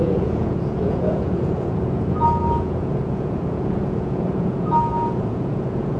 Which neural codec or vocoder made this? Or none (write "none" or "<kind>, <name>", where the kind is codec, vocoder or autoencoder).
vocoder, Vocos